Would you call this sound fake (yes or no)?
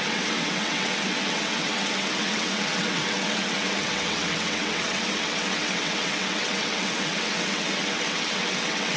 yes